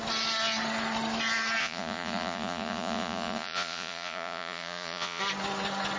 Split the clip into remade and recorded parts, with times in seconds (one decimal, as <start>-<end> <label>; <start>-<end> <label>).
0.0-1.6 recorded; 1.6-5.2 remade; 5.2-6.0 recorded